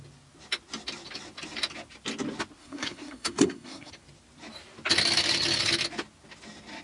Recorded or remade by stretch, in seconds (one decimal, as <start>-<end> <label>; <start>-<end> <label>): 0.0-2.6 recorded; 2.6-3.9 remade; 3.9-6.8 recorded